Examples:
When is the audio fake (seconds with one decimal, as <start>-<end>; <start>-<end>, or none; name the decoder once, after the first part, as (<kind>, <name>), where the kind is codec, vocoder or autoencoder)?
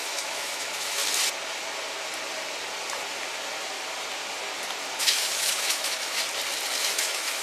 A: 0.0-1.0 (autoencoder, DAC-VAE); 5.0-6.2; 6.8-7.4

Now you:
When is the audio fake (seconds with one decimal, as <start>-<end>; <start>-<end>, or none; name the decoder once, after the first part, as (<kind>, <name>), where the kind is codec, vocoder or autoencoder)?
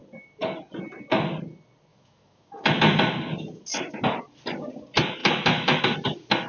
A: 1.9-2.8 (autoencoder, DAC-VAE); 5.2-5.8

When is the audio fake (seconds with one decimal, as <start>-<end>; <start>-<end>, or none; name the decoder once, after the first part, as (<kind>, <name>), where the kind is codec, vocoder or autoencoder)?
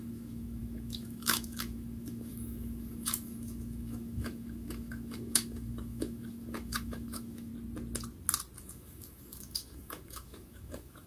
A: 0.0-7.5 (autoencoder, DAC-VAE); 8.6-11.1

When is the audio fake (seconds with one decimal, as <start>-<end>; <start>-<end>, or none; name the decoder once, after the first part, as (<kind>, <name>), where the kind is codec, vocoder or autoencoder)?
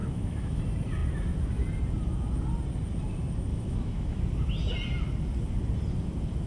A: 0.0-0.6 (autoencoder, DAC-VAE); 3.5-4.2